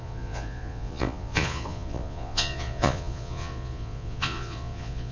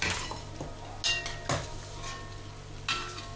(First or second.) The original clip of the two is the second